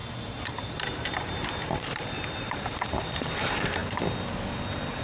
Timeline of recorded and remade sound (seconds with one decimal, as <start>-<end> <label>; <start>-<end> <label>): 0.0-3.8 remade; 3.8-5.0 recorded